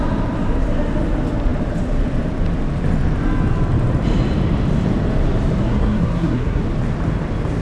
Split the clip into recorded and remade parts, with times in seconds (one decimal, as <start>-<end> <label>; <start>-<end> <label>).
0.0-5.6 recorded; 5.6-6.6 remade; 6.6-7.6 recorded